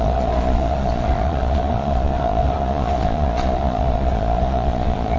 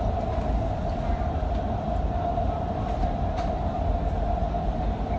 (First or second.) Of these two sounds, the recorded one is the second